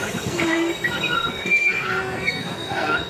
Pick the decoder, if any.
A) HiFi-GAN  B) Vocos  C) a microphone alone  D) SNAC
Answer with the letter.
D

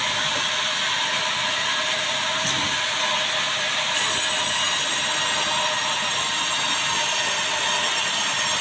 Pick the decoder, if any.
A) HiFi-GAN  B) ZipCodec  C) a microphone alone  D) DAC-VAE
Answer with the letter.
C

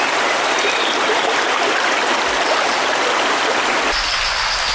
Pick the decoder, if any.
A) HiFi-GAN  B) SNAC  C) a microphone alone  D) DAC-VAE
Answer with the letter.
C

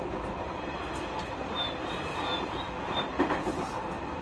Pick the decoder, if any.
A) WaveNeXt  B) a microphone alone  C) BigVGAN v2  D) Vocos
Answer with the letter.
B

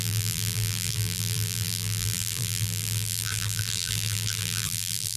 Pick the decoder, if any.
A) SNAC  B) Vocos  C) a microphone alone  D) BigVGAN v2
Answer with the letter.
D